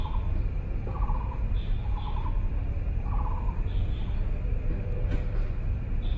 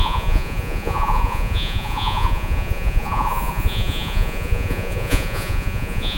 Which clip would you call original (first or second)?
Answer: first